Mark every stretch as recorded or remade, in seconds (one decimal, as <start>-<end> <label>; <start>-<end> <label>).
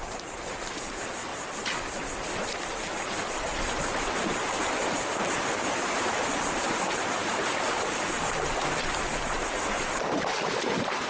0.0-1.3 remade; 1.3-4.6 recorded; 4.6-11.1 remade